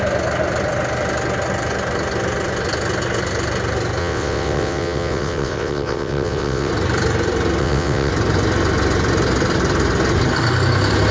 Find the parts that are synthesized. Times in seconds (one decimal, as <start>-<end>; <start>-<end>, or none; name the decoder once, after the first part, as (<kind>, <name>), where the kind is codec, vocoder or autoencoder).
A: 4.0-6.7 (vocoder, WaveNeXt); 7.6-8.1